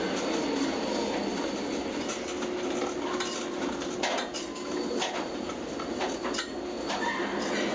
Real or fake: real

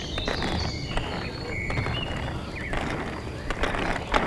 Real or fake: real